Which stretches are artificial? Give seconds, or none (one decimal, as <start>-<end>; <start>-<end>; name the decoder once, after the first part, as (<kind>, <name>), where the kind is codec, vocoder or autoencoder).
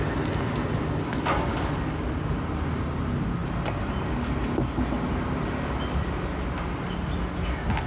none